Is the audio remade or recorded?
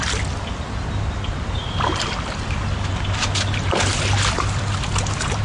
recorded